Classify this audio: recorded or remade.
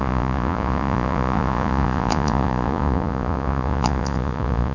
remade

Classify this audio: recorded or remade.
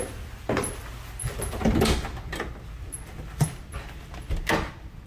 recorded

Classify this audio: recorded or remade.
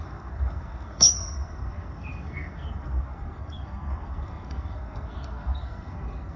remade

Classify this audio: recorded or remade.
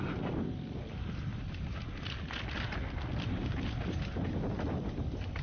recorded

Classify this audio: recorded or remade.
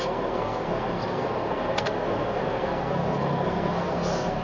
remade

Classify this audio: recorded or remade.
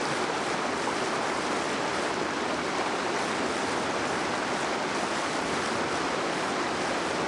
recorded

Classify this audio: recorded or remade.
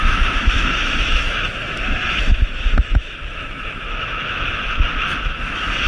remade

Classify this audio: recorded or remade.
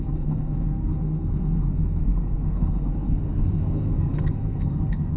remade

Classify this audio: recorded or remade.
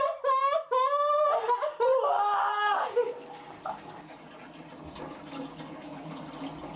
recorded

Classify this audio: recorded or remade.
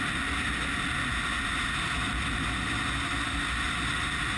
recorded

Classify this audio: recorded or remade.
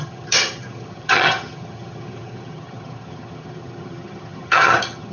remade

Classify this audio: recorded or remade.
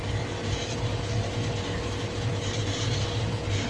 recorded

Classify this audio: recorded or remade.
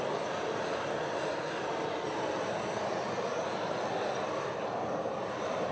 recorded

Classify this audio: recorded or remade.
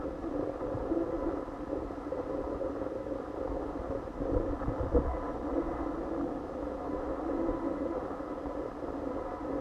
recorded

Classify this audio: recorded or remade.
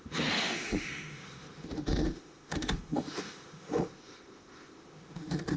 remade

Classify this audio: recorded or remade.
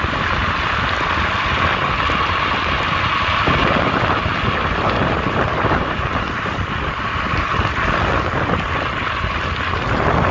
recorded